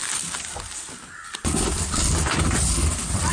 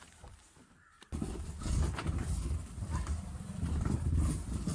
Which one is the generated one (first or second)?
second